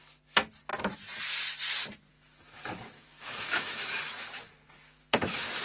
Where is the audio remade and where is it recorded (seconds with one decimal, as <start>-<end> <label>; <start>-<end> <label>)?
0.0-2.1 recorded; 2.1-5.6 remade